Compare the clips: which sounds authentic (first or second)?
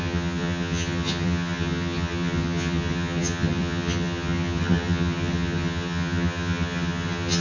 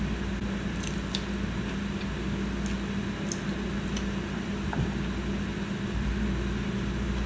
second